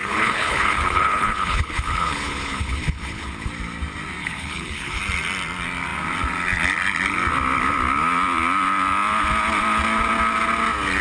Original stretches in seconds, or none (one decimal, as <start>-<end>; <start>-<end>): 3.5-4.2; 5.0-11.0